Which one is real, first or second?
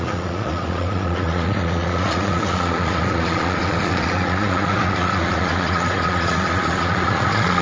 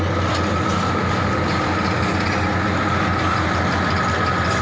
second